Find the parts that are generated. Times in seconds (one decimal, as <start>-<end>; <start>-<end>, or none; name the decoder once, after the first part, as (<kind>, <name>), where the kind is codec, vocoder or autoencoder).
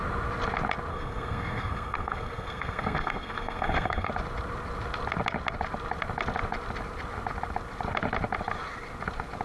0.9-4.1 (codec, SNAC)